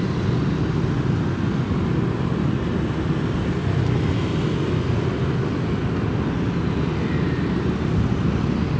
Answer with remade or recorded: recorded